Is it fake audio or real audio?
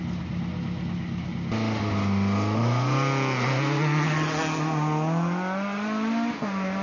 real